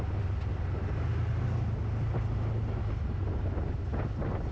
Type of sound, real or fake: real